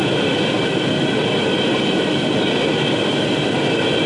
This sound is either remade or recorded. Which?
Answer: recorded